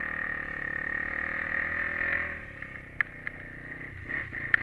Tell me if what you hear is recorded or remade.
recorded